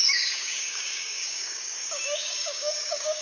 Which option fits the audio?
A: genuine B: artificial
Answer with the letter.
B